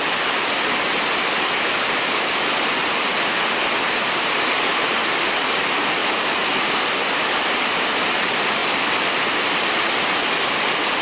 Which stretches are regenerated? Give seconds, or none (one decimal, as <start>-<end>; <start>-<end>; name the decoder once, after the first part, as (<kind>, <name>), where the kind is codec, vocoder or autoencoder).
none